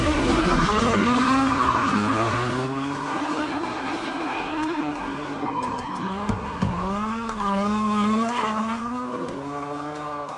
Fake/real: fake